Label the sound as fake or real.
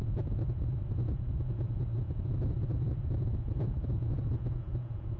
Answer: fake